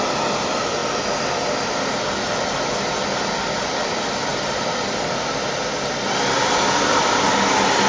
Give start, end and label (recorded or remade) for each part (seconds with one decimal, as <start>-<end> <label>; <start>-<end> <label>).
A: 0.0-0.8 remade; 0.8-3.6 recorded; 3.6-4.3 remade; 4.3-5.2 recorded; 5.2-7.9 remade